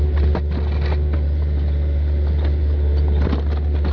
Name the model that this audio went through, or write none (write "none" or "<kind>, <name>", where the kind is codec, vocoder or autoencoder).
none